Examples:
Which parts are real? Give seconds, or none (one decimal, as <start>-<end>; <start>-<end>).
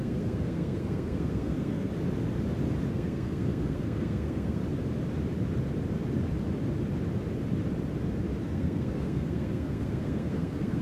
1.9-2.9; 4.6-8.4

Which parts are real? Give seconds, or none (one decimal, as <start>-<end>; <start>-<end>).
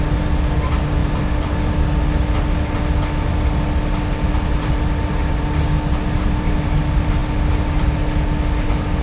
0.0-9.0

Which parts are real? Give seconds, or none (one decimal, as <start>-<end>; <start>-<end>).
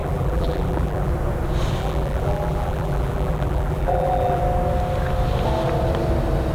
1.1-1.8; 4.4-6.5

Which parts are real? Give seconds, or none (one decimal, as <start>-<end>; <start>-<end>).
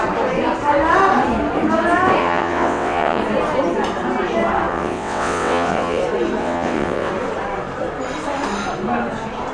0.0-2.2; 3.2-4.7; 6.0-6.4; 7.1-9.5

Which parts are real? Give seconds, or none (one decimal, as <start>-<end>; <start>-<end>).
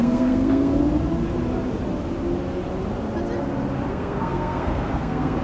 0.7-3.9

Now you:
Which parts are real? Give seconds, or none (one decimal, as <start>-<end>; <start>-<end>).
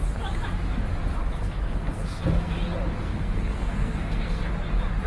0.0-1.2; 2.6-3.0; 4.5-5.1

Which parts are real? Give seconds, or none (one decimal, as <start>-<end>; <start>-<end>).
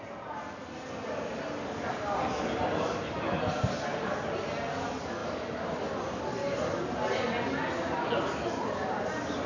0.0-9.5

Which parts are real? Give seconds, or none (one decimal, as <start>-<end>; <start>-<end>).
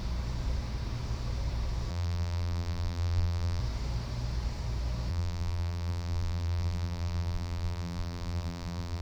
0.0-1.9; 3.6-5.1